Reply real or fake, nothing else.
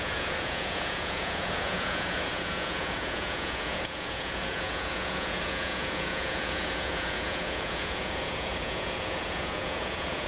fake